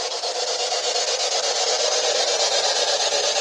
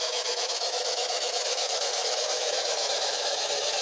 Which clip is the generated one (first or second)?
second